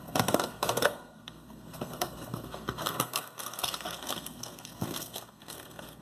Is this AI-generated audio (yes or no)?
yes